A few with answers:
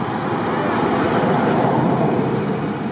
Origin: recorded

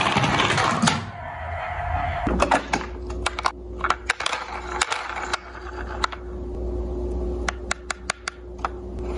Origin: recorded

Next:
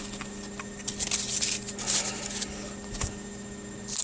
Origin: recorded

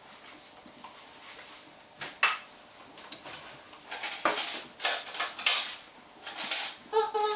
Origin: recorded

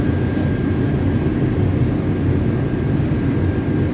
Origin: recorded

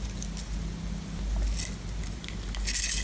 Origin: recorded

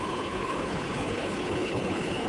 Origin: remade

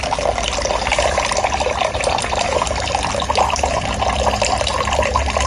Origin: recorded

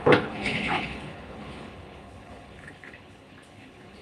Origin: remade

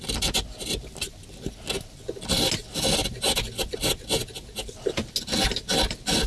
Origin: recorded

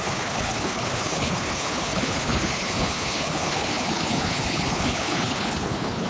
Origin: remade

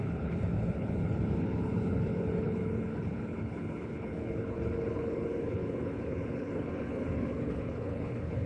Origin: remade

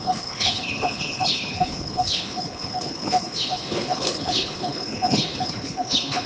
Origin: remade